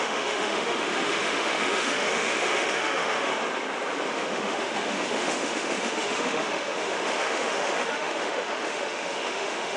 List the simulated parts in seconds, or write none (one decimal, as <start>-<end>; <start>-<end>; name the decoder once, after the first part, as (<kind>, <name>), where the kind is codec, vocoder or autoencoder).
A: 0.0-3.3 (autoencoder, DAC-VAE); 4.1-9.8